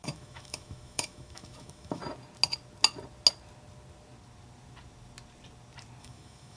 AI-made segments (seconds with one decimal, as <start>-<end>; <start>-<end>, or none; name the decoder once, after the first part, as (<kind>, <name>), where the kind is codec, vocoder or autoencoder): 0.0-2.0 (autoencoder, DAC-VAE); 6.0-6.6